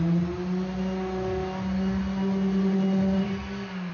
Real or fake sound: real